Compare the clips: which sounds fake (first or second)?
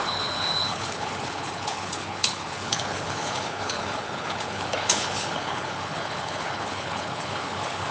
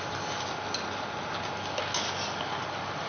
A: first